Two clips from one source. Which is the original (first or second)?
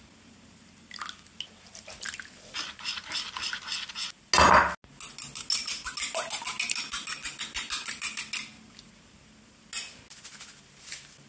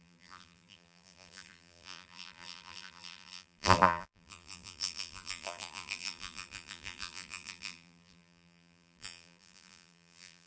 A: first